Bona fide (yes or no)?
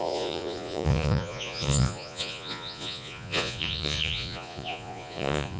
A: no